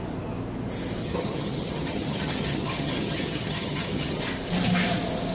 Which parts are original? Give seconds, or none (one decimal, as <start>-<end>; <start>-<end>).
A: 0.0-1.0; 4.2-5.3